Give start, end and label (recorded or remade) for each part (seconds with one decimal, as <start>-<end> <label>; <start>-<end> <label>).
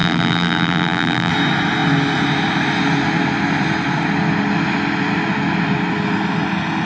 0.0-1.3 remade; 1.3-6.9 recorded